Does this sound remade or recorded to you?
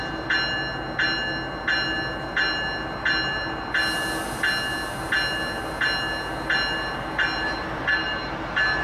recorded